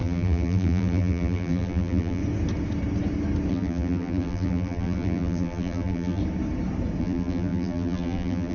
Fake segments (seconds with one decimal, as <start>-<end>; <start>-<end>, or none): 0.0-2.2; 3.5-6.2; 7.0-8.5